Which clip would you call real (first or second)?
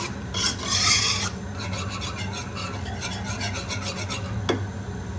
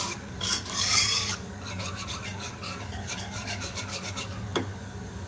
first